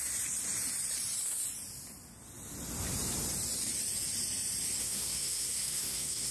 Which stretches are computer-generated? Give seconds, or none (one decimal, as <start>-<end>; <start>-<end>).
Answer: 4.8-6.3